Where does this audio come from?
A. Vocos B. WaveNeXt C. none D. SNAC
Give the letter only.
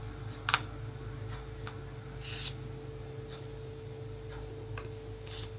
C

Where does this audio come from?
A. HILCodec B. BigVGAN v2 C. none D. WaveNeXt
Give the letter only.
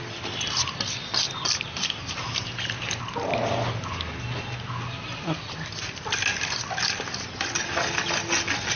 C